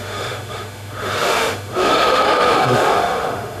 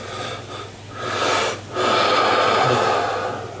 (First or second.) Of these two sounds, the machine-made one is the first